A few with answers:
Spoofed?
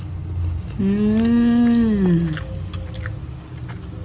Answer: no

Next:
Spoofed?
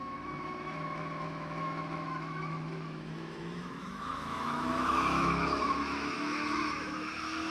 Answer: yes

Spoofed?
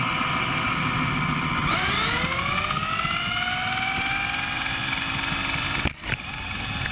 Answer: no